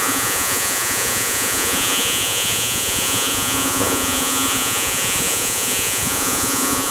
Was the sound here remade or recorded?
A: remade